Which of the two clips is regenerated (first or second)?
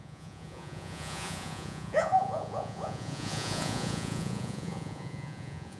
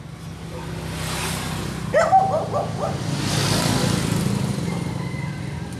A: first